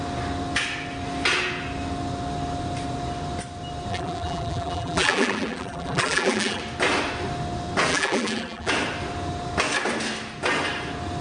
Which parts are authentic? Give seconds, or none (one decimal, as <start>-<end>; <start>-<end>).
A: 0.0-3.9; 6.6-7.9; 8.7-11.2